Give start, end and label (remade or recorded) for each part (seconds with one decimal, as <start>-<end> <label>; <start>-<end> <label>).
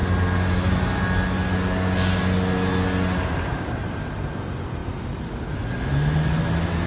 0.0-6.9 recorded